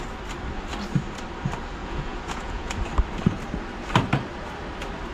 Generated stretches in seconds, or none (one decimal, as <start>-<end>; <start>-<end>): 1.8-2.7